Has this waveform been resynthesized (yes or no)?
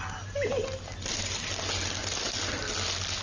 no